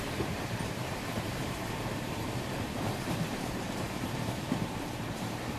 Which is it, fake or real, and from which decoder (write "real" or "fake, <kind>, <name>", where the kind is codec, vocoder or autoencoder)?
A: fake, vocoder, BigVGAN v2